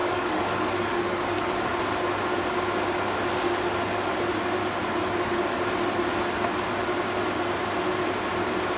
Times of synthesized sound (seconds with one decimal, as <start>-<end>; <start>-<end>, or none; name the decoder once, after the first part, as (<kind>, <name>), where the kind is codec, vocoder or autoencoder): 0.0-1.7 (codec, DAC)